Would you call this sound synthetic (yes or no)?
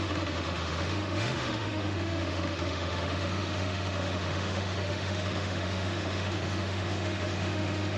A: yes